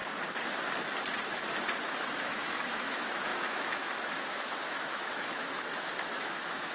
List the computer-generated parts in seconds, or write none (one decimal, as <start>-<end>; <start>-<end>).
2.0-6.7